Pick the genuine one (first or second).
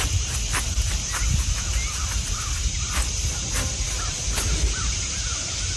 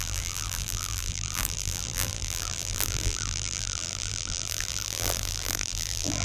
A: first